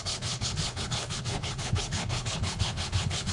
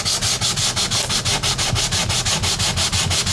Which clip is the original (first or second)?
second